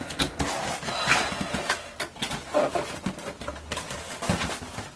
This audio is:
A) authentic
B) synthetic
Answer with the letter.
A